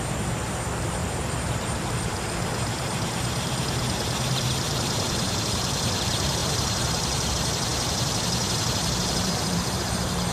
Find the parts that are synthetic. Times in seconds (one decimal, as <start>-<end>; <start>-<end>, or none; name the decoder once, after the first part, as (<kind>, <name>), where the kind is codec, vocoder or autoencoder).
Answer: 0.0-10.3 (vocoder, BigVGAN v2)

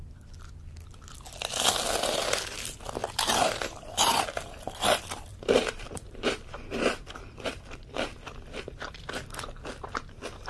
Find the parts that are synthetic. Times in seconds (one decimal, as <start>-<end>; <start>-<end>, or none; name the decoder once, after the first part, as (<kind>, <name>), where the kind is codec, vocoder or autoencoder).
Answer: 3.0-4.2 (vocoder, BigVGAN v2); 5.3-7.5

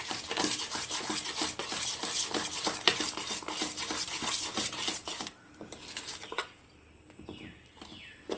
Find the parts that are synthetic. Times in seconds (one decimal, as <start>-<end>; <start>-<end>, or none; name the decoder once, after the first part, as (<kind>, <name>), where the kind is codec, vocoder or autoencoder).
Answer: 0.0-8.4 (vocoder, BigVGAN v2)

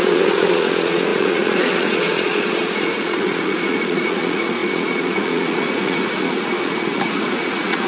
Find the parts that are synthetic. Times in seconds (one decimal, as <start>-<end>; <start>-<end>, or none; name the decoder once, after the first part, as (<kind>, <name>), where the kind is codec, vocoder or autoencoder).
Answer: 0.0-7.9 (vocoder, Vocos)

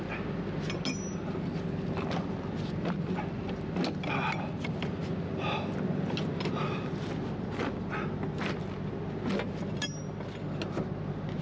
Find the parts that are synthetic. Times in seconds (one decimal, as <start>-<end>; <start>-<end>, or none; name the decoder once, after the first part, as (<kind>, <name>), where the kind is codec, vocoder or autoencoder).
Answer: none

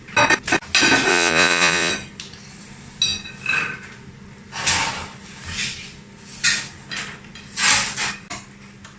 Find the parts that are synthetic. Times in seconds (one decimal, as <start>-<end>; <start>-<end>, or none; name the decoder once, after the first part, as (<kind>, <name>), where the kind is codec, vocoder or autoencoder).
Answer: 1.1-1.9 (vocoder, Vocos)

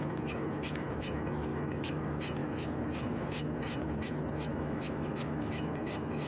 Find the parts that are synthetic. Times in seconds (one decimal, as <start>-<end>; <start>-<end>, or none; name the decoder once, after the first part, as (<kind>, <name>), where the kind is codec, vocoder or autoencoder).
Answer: 1.5-2.0 (autoencoder, DAC-VAE); 4.5-5.5

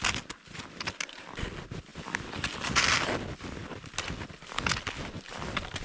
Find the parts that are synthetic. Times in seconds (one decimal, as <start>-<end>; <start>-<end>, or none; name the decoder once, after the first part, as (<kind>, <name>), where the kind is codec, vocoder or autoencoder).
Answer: none